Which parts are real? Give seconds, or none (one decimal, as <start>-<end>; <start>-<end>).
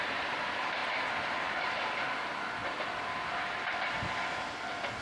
0.0-0.8; 2.1-2.6; 3.6-5.0